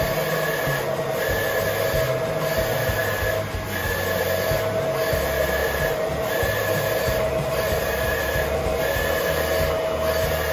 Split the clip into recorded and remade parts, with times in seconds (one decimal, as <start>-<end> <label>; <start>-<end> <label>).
0.0-5.6 recorded; 5.6-8.8 remade; 8.8-10.5 recorded